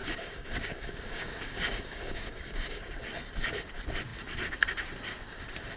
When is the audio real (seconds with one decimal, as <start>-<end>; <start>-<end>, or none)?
2.9-5.8